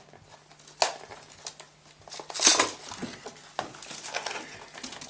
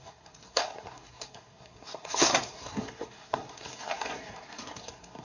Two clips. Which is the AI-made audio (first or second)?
second